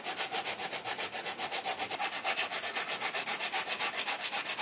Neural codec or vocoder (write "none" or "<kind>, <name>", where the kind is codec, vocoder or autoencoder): none